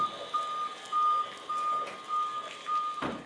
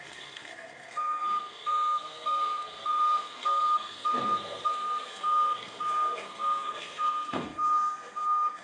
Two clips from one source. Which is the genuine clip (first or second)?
first